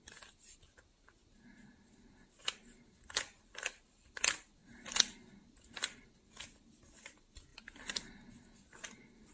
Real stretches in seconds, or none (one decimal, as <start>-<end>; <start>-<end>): 0.0-9.3